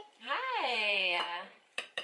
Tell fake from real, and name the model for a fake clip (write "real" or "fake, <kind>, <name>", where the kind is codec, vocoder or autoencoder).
fake, vocoder, BigVGAN v2